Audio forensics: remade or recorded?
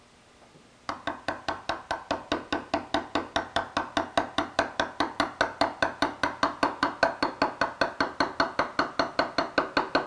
recorded